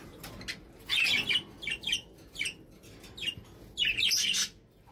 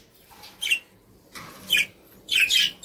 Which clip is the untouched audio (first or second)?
first